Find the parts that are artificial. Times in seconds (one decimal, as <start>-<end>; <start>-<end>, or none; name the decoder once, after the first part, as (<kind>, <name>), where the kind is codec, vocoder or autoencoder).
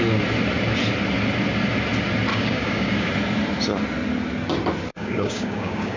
2.3-3.1 (codec, DAC); 4.9-6.0